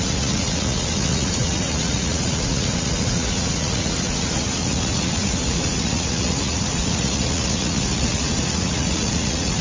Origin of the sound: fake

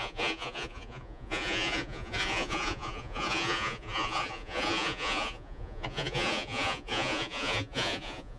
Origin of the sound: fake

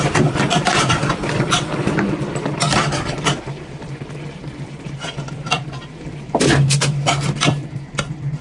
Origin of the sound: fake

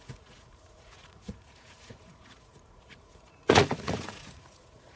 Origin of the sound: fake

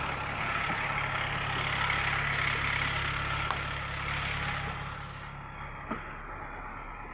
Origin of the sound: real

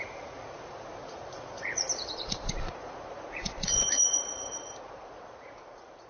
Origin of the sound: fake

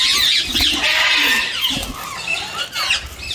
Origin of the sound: real